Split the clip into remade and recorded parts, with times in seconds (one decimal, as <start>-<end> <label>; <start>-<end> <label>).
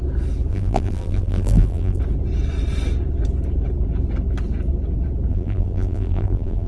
0.0-0.5 recorded; 0.5-2.0 remade; 2.0-5.3 recorded; 5.3-6.7 remade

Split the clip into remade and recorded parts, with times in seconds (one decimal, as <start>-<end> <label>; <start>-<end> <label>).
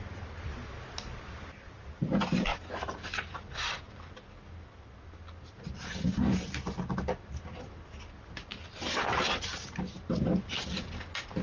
0.0-11.4 recorded